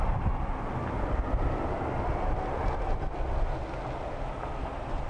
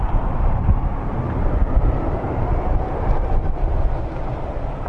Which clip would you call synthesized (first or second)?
second